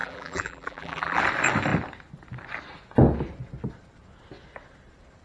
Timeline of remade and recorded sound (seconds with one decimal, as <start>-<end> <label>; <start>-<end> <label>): 0.0-1.2 remade; 1.2-5.2 recorded